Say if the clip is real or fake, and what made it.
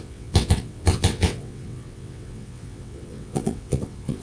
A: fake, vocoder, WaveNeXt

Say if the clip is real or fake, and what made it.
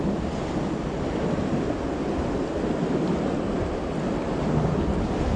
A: real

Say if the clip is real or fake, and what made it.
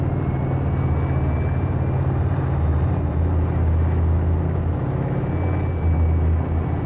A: real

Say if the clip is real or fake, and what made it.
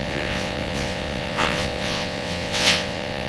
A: fake, vocoder, WaveNeXt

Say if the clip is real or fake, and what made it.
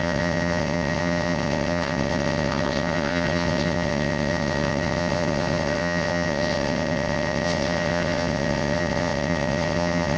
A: fake, vocoder, WaveNeXt